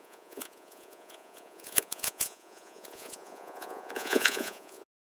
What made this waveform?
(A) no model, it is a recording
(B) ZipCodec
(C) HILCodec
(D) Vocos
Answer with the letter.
D